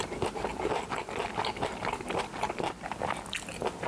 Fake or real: real